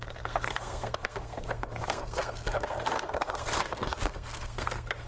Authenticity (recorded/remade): remade